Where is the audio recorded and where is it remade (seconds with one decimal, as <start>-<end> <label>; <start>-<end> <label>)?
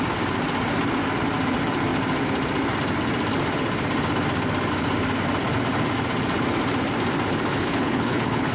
0.0-7.5 recorded; 7.5-8.5 remade